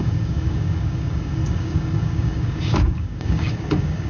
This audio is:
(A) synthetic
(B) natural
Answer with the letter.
A